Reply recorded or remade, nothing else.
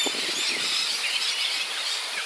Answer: recorded